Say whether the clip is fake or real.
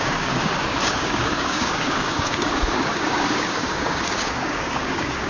fake